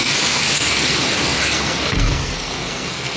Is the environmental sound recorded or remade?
remade